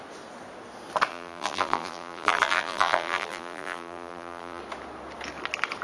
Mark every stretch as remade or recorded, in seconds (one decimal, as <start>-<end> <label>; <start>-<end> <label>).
0.0-1.1 recorded; 1.1-4.6 remade; 4.6-5.8 recorded